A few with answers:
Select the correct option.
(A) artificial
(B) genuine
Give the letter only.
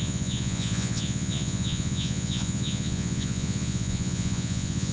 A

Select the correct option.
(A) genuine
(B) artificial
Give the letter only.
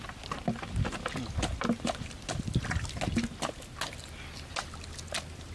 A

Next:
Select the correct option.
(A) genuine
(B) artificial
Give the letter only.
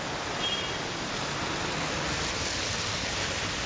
A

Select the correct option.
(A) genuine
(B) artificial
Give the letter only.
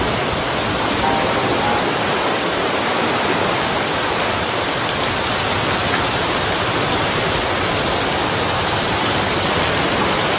A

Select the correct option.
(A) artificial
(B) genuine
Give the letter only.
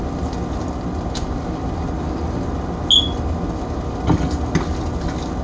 B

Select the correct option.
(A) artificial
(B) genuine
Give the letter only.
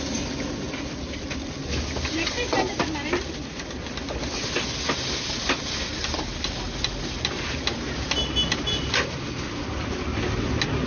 B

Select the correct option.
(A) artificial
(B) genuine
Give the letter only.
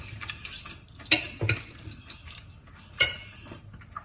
B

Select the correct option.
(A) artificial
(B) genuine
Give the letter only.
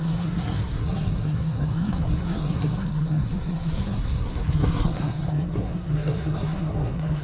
A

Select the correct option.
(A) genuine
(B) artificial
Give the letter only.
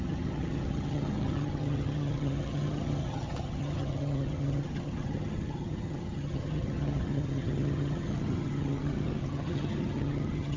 B